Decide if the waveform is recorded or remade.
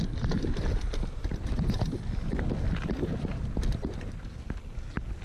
recorded